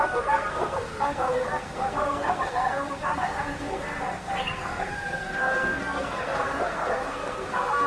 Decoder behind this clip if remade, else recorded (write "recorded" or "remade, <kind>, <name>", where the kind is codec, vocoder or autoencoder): remade, codec, SNAC